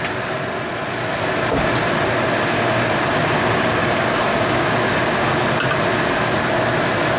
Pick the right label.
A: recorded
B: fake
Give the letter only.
A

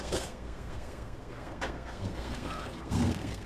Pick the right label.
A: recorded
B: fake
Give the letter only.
B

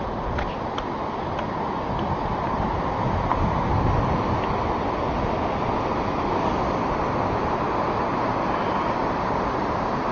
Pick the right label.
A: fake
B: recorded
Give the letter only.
B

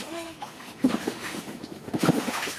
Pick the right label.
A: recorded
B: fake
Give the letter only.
B